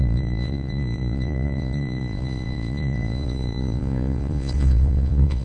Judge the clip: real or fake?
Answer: fake